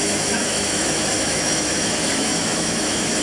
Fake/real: fake